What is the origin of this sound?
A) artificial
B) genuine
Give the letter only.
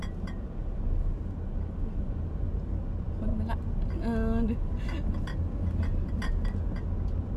B